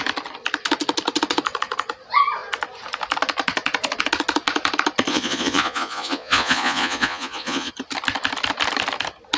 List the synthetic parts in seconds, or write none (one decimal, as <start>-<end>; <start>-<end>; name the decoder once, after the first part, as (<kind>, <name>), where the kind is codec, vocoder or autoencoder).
5.1-7.7 (vocoder, Vocos)